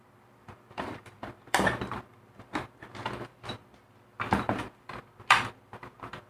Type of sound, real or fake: fake